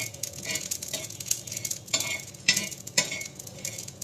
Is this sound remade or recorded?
remade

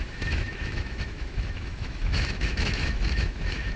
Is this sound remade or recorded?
remade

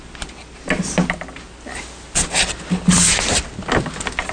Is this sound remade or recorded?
recorded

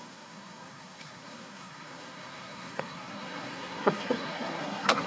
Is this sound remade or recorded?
remade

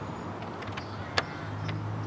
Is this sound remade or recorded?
recorded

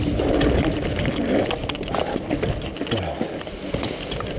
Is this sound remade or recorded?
recorded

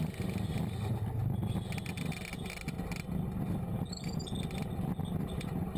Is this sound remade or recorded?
recorded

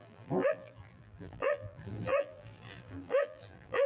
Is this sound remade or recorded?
remade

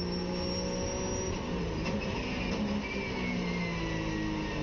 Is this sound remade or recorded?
recorded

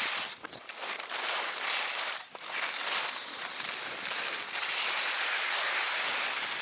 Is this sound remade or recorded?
recorded